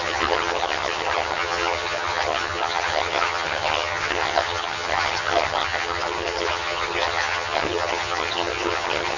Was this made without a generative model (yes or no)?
no